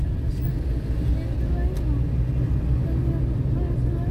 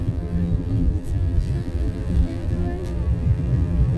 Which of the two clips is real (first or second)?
first